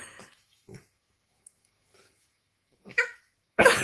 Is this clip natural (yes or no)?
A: no